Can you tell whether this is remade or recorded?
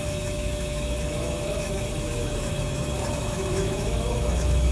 remade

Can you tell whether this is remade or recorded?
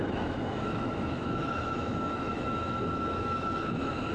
remade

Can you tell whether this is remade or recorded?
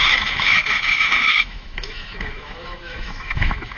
remade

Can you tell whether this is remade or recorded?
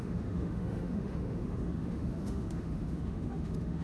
remade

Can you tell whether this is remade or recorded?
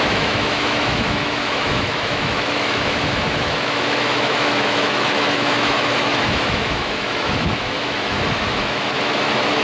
remade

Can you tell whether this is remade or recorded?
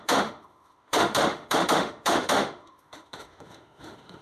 remade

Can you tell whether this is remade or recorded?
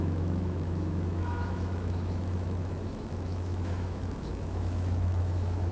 remade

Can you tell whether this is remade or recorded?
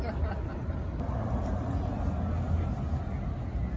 recorded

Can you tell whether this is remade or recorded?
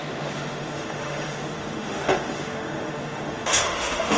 remade